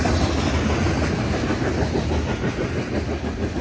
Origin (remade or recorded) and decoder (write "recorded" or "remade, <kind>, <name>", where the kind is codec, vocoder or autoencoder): recorded